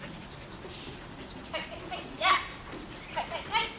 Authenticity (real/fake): real